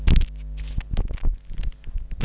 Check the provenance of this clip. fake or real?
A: real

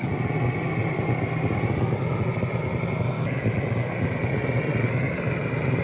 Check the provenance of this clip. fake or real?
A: real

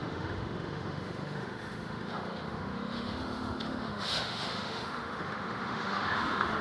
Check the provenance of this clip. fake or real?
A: fake